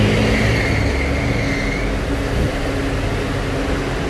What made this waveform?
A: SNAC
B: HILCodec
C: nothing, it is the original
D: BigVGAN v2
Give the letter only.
C